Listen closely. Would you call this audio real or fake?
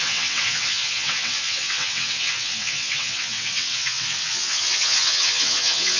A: fake